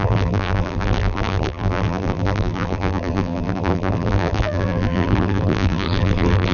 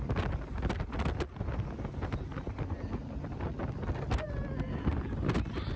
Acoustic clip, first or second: second